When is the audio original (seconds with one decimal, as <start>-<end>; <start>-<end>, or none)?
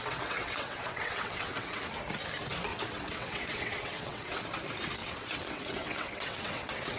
1.8-2.7; 4.4-5.0